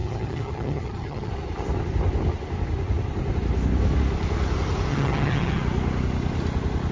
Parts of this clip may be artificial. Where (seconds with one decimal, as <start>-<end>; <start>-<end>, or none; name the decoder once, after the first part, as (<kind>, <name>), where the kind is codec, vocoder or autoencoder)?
0.0-1.3 (vocoder, HiFi-GAN); 4.9-5.6